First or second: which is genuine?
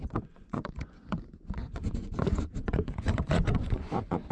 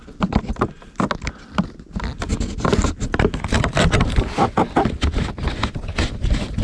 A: second